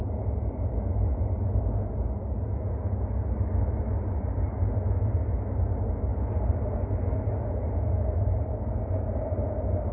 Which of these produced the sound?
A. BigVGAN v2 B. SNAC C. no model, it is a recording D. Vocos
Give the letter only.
C